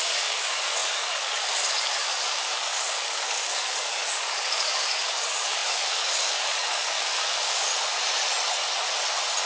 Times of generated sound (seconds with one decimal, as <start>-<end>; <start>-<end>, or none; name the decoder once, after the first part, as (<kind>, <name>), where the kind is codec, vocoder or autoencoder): 0.0-7.7 (codec, DAC)